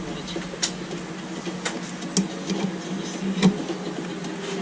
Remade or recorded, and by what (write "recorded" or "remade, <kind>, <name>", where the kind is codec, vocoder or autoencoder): recorded